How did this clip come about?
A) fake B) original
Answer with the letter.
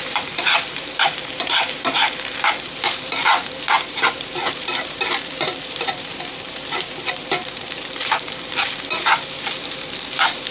A